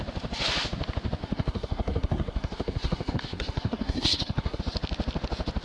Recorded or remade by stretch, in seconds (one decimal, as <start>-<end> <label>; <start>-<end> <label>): 0.0-1.2 recorded; 1.2-4.6 remade; 4.6-5.6 recorded